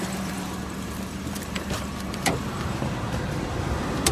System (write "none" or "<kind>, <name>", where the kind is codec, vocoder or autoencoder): vocoder, BigVGAN v2